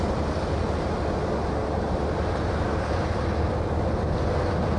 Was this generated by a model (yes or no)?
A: no